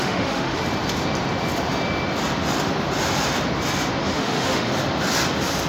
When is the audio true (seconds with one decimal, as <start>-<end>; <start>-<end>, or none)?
0.6-4.0; 4.7-5.7